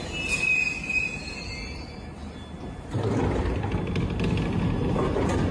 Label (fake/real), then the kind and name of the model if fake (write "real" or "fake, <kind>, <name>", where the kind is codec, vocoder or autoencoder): real